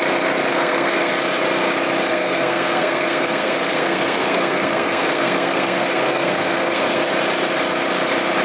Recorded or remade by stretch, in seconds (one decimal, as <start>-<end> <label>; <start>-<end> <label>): 0.0-0.5 recorded; 0.5-1.1 remade; 1.1-2.1 recorded; 2.1-7.1 remade; 7.1-8.4 recorded